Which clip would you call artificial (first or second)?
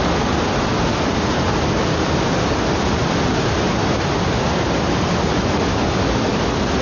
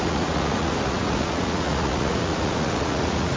second